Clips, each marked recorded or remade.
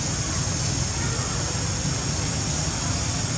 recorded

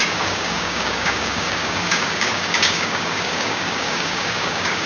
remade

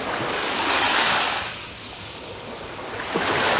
remade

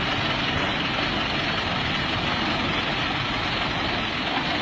recorded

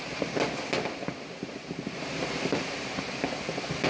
recorded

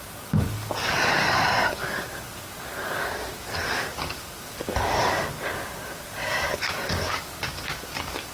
remade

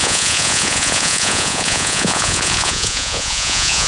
remade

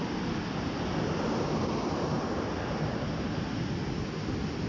recorded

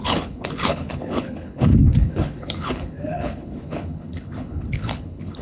remade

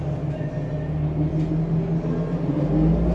recorded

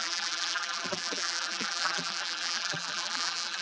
remade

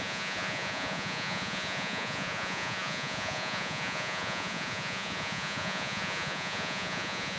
remade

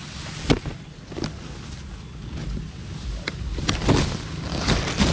recorded